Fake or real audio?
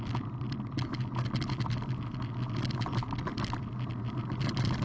real